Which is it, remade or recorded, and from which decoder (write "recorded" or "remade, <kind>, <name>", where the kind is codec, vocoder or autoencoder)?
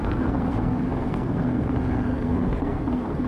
remade, codec, SNAC